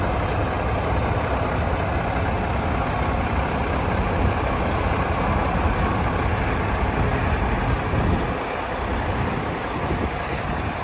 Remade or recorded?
recorded